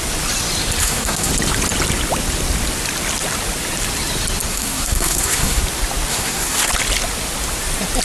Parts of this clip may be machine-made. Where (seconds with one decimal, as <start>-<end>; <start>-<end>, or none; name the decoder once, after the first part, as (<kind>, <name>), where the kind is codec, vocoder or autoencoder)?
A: 0.8-1.3 (codec, SNAC); 4.5-5.6; 6.1-6.7